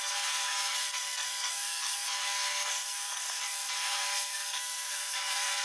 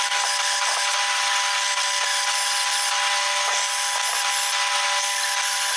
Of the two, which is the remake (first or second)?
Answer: first